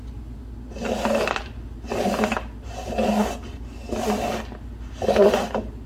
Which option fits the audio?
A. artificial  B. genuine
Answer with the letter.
B